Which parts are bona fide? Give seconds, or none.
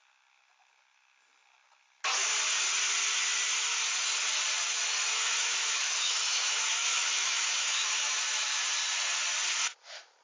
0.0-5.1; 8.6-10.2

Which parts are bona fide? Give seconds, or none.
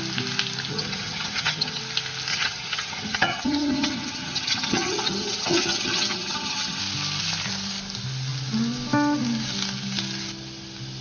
0.0-0.7; 1.8-2.3; 6.8-11.0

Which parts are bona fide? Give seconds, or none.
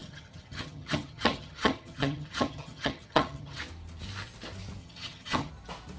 3.6-4.8; 5.5-6.0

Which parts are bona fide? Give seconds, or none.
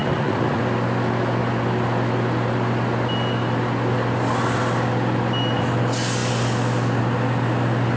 0.6-8.0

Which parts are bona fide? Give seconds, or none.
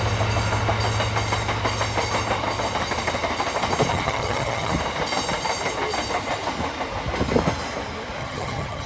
0.0-3.9; 4.7-8.2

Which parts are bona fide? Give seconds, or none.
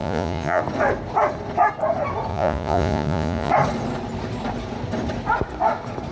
0.6-2.3; 3.5-6.1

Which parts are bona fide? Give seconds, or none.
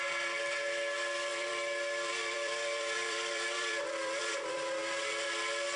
0.0-1.3; 4.8-5.8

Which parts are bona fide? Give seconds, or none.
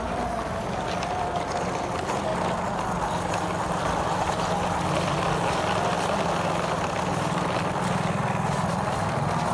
0.0-9.5